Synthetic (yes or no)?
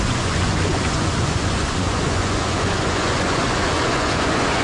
yes